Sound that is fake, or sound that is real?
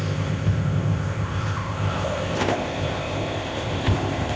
fake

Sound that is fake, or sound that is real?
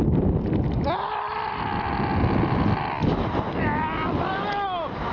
real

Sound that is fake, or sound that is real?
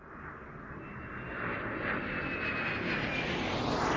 real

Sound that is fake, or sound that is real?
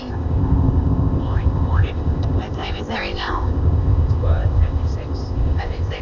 fake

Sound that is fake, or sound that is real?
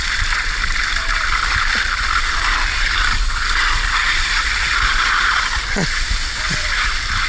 real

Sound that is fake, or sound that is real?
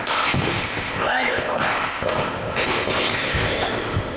fake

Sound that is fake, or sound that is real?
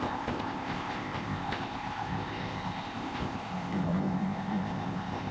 fake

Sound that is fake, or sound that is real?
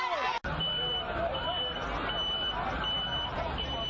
real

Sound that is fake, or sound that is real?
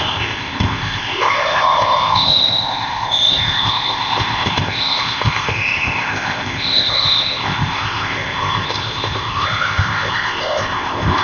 fake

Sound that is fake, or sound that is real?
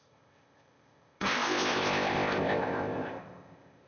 fake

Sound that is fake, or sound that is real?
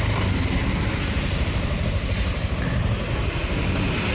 real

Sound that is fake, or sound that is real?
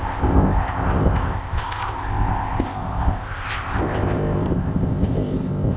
fake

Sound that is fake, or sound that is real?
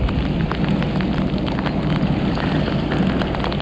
real